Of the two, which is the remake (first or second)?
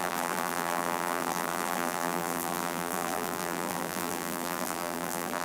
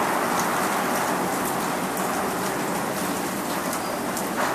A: first